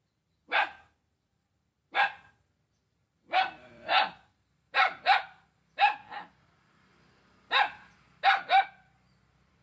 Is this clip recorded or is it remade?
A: recorded